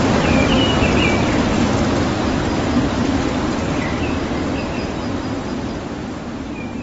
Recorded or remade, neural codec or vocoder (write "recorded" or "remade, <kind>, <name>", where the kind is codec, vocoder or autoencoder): recorded